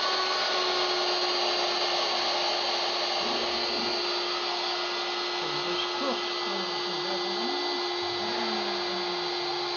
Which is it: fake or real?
real